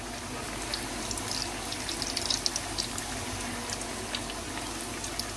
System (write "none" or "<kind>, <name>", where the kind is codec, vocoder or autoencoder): none